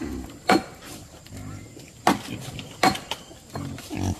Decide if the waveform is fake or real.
real